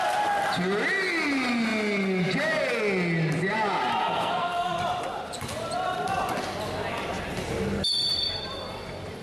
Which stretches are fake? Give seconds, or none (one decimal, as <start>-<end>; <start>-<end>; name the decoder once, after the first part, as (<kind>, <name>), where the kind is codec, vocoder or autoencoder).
4.0-4.8 (codec, SNAC)